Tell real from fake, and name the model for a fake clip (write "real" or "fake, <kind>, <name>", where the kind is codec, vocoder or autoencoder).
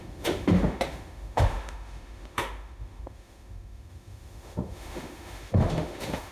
fake, autoencoder, DAC-VAE